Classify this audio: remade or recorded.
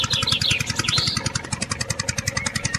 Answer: recorded